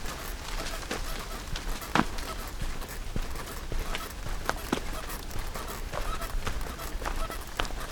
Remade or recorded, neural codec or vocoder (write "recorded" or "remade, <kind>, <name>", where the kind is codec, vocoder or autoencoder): recorded